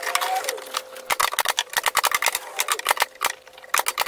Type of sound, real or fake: real